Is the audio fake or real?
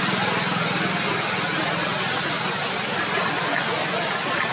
real